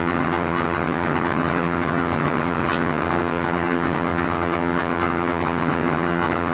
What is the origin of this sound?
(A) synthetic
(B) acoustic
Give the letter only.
A